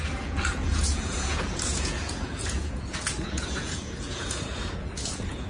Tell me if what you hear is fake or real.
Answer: fake